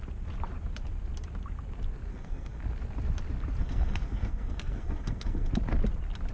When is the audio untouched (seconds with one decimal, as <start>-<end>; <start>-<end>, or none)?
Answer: 0.0-2.1; 2.6-3.6; 5.5-6.3